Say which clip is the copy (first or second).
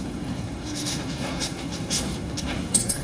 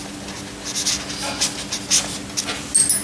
first